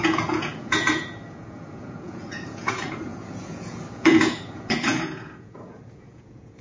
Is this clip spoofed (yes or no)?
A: yes